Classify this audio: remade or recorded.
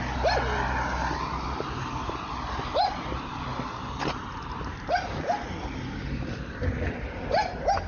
recorded